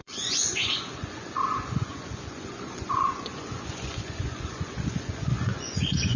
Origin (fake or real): fake